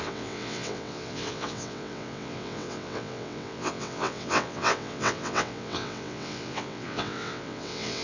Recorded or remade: remade